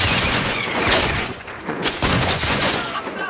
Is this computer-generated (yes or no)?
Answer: yes